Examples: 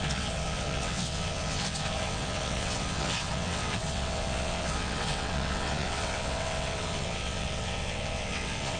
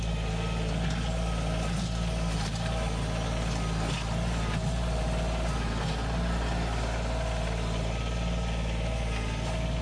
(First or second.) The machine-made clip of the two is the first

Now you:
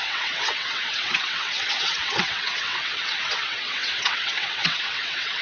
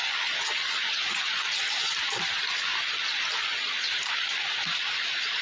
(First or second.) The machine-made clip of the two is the first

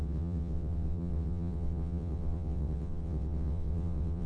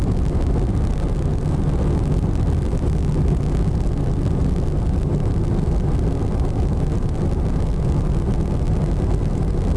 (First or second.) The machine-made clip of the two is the first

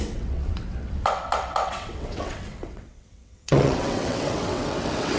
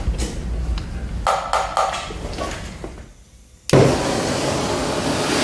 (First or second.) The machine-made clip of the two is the first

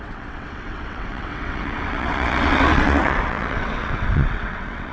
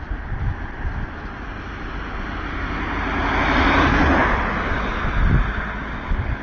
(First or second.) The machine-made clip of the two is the first